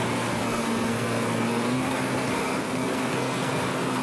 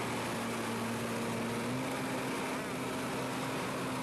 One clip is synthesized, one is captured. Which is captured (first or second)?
second